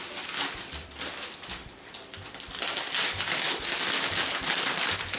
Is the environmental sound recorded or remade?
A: remade